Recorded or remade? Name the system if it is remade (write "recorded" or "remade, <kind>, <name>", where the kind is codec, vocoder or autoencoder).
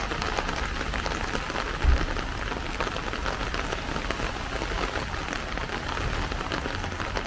recorded